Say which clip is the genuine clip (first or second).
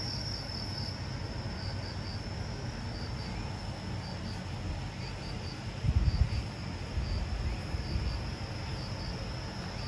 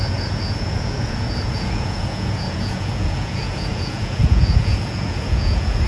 first